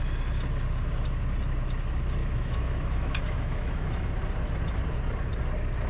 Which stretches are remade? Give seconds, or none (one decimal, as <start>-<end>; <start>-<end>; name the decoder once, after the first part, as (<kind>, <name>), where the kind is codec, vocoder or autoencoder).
2.2-4.1 (autoencoder, DAC-VAE)